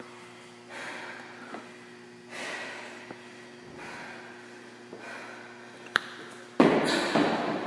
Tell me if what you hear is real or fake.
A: real